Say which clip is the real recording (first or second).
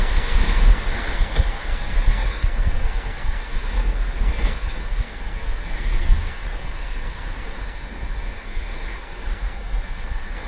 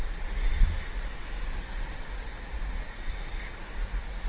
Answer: second